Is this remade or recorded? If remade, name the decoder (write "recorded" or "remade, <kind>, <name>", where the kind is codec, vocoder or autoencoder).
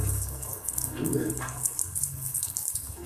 remade, codec, SNAC